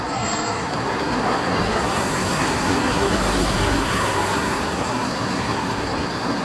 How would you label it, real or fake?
fake